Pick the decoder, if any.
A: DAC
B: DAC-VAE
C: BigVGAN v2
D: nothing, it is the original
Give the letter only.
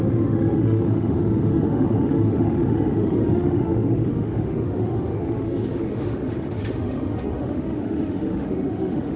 B